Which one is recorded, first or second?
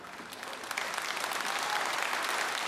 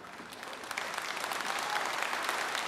first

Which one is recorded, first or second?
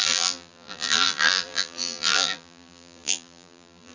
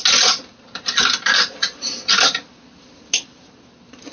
second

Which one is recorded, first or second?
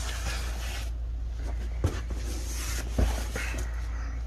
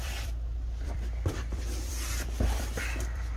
first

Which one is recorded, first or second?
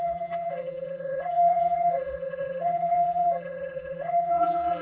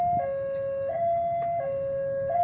second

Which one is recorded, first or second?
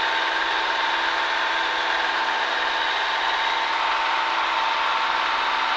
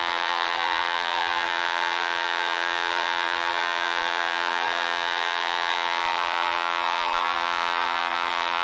first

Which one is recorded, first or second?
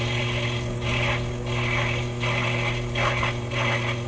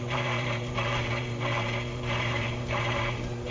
first